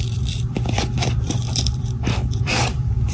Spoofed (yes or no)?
yes